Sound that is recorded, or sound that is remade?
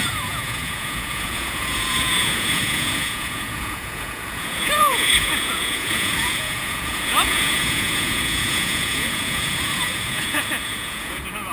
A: remade